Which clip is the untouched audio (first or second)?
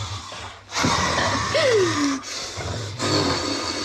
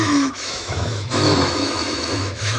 first